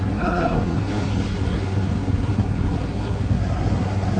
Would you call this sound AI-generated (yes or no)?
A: yes